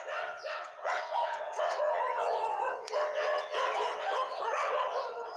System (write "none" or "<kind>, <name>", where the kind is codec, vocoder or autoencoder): vocoder, WaveNeXt